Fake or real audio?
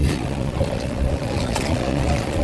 fake